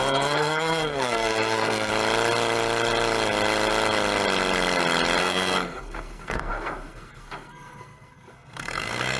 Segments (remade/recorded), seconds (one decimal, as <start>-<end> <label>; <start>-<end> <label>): 0.0-1.9 remade; 1.9-5.2 recorded; 5.2-9.2 remade